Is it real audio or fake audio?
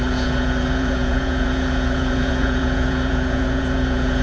fake